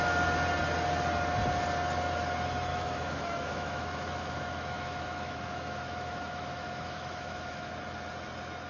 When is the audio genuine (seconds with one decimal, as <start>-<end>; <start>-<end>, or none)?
0.0-2.7; 7.7-8.7